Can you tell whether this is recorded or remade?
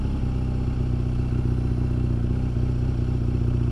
recorded